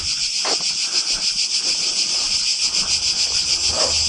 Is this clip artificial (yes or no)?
no